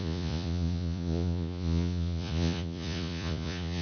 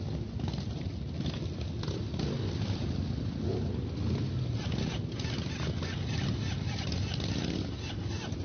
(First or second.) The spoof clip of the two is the first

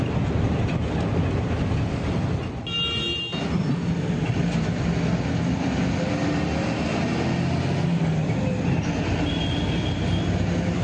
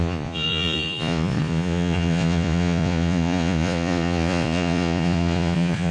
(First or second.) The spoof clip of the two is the second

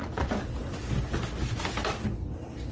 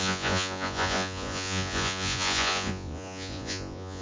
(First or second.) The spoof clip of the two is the second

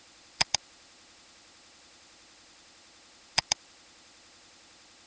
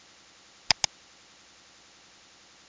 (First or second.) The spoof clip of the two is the first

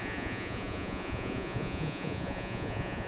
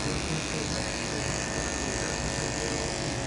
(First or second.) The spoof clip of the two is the first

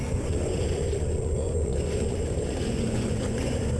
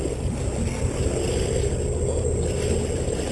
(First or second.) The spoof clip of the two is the first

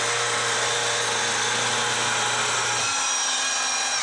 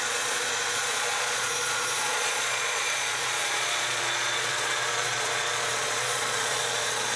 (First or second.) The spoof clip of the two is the second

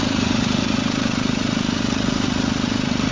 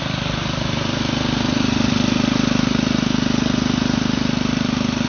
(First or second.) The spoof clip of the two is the first